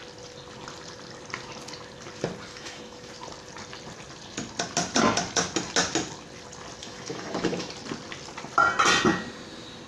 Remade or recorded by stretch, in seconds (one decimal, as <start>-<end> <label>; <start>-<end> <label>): 0.0-2.5 recorded; 2.5-3.1 remade; 3.1-6.8 recorded; 6.8-7.7 remade; 7.7-9.9 recorded